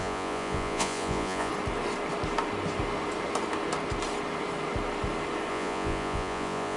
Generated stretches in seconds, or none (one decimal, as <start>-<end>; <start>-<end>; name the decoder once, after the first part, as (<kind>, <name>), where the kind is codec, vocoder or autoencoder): 0.0-1.5 (vocoder, Vocos); 5.5-6.8